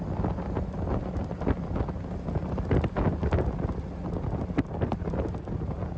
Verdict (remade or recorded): recorded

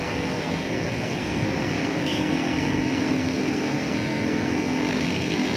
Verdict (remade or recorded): remade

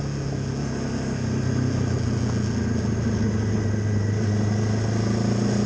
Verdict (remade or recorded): recorded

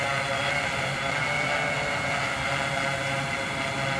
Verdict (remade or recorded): recorded